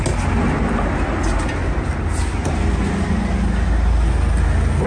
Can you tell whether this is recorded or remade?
recorded